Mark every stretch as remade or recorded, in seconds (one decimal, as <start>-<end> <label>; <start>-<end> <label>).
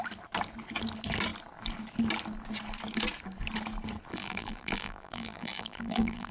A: 0.0-4.1 recorded; 4.1-6.3 remade